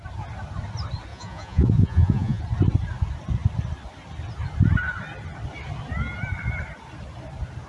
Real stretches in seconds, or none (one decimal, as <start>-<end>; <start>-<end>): 0.0-1.1; 2.4-7.7